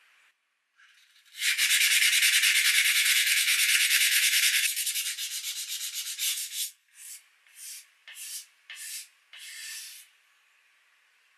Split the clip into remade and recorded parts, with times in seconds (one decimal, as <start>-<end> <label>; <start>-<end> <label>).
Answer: 0.0-2.5 recorded; 2.5-4.9 remade; 4.9-6.3 recorded; 6.3-7.1 remade; 7.1-11.4 recorded